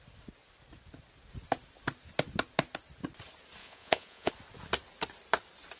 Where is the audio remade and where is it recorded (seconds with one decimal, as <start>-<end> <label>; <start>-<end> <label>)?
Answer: 0.0-3.6 recorded; 3.6-4.3 remade; 4.3-5.8 recorded